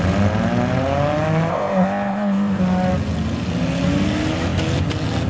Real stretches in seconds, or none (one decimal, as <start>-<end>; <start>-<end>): 0.0-1.5; 2.6-5.3